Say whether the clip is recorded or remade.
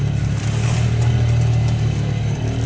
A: recorded